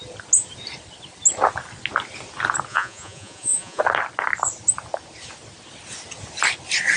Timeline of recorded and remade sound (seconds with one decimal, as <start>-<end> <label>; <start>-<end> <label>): 0.0-2.7 recorded; 2.7-3.8 remade; 3.8-7.0 recorded